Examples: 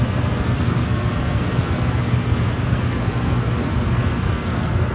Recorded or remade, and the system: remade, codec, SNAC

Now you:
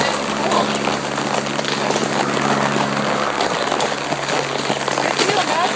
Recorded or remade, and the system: recorded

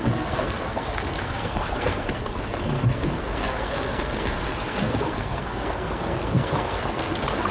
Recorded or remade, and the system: remade, codec, SNAC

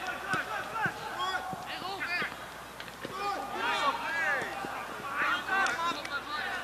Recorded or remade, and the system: recorded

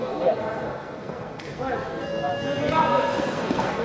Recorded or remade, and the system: remade, codec, SNAC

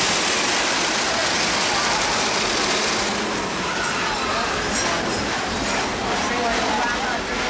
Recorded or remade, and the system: recorded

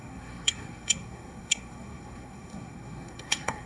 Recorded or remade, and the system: remade, codec, SNAC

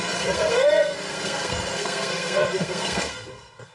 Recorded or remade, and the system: remade, codec, SNAC